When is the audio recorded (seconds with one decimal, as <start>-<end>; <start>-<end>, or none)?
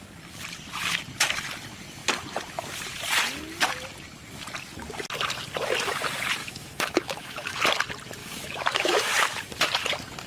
0.0-6.4; 7.6-8.2; 9.1-10.3